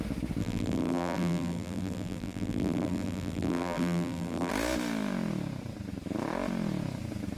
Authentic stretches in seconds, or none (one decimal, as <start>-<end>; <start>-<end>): 0.0-0.4; 4.5-7.4